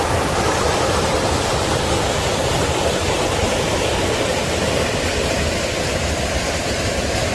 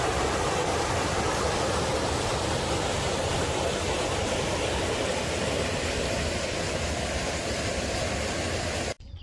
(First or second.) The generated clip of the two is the first